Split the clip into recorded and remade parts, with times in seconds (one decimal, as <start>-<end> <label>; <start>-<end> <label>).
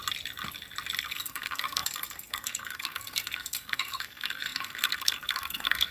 0.0-1.0 recorded; 1.0-5.9 remade